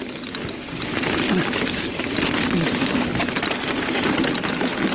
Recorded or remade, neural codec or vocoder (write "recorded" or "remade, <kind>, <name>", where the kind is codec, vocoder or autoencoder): recorded